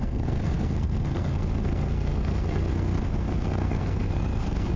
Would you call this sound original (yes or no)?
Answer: no